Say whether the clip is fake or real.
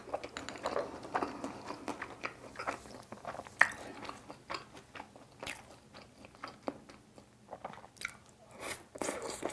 real